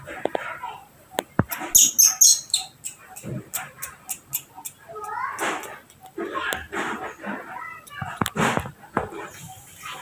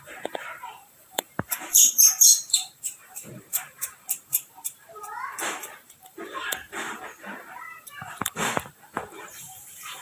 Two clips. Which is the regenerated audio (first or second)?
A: second